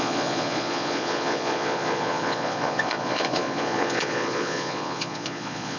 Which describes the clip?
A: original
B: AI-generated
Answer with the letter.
B